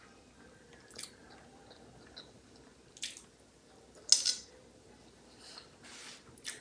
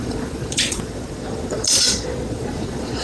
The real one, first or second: first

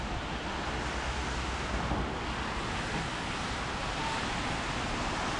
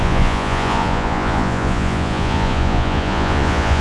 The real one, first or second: first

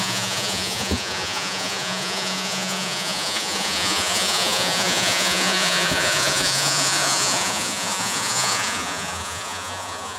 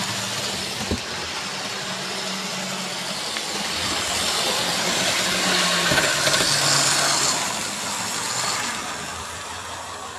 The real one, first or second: second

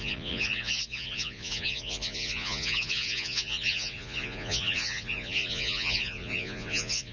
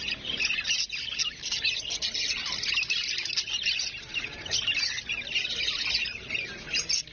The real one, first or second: second